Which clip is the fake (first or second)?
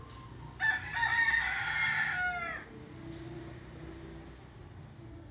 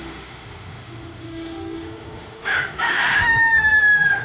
second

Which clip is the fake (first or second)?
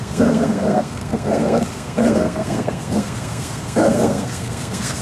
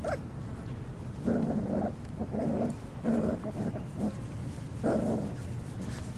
first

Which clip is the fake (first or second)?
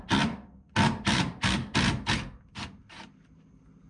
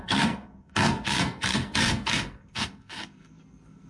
second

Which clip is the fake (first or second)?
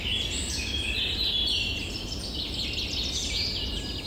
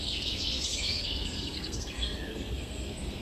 second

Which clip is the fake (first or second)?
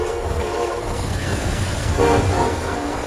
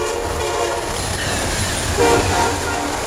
first